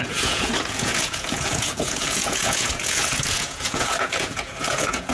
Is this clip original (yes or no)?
no